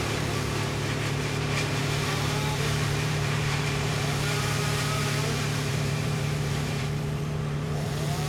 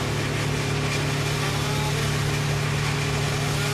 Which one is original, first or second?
second